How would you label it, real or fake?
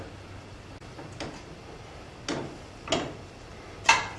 real